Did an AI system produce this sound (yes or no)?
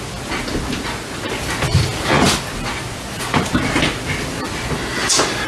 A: no